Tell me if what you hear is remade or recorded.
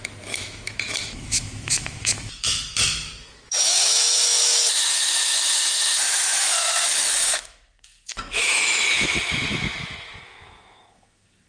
remade